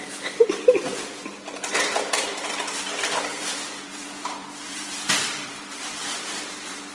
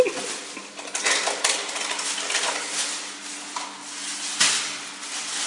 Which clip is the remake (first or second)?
first